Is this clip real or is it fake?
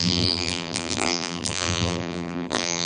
fake